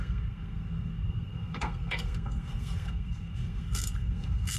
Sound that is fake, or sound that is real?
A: fake